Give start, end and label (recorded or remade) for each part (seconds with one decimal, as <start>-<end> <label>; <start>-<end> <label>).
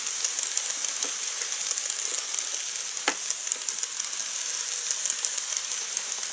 0.0-6.3 recorded